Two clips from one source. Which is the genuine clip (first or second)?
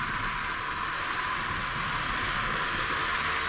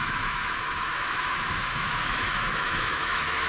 first